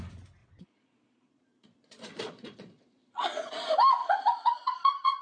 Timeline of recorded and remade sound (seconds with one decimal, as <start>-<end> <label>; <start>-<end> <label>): 0.0-0.4 recorded; 0.4-3.5 remade; 3.5-4.0 recorded; 4.0-5.2 remade